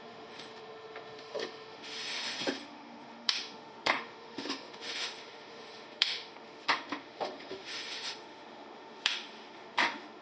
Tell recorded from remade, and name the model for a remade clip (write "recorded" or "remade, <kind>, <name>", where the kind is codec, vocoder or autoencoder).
remade, autoencoder, DAC-VAE